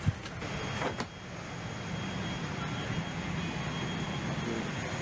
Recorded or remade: recorded